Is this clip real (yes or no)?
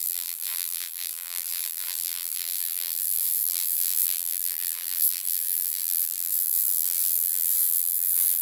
no